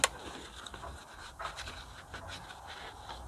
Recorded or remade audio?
recorded